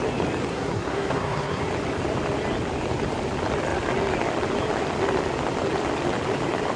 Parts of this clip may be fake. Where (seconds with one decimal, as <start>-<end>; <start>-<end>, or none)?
0.5-1.6